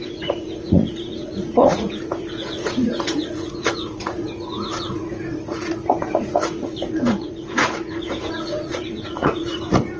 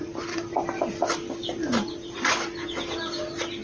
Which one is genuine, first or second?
second